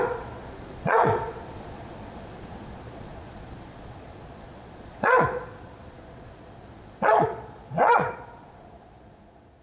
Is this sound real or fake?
fake